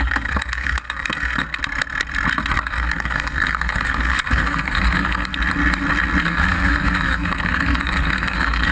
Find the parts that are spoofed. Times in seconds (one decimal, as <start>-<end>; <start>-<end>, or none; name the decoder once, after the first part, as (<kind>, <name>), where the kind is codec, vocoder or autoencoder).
0.0-1.6 (codec, SNAC); 2.7-5.3; 6.2-8.7